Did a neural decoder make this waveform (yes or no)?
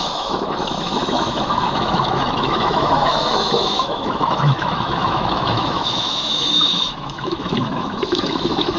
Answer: yes